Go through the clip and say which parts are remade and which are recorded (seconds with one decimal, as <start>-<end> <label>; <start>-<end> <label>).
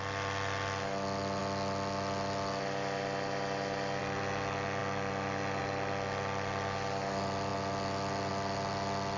0.0-9.2 recorded